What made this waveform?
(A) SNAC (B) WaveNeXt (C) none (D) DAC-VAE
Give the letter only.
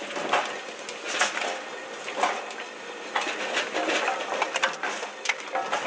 C